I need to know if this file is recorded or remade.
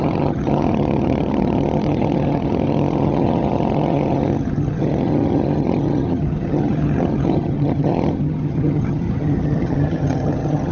remade